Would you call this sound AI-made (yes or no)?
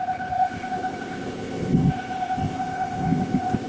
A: yes